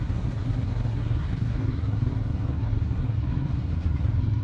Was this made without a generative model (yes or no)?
no